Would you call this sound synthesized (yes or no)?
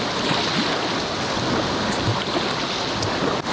no